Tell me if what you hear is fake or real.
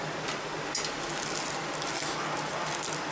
real